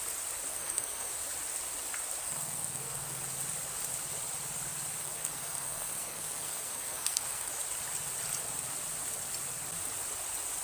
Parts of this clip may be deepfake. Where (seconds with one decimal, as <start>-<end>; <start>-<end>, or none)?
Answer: 0.5-1.1; 2.2-3.2; 5.0-7.5